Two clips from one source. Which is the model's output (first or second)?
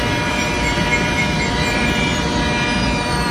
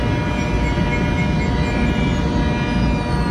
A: first